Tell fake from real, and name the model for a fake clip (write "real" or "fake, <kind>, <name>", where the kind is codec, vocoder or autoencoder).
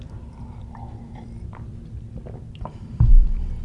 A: fake, vocoder, BigVGAN v2